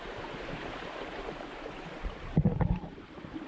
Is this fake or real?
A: fake